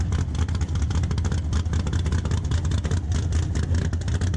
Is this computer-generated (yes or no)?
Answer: no